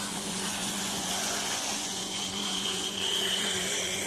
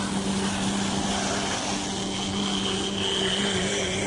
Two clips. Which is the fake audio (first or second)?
first